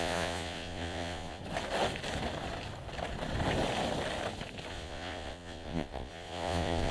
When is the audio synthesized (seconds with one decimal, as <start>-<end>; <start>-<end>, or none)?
0.0-1.4; 4.7-6.9